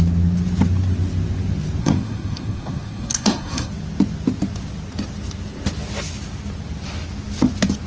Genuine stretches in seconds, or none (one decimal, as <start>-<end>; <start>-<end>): 0.0-1.8; 3.7-7.9